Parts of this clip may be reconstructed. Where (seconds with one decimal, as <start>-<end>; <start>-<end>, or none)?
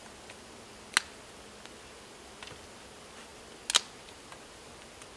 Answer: none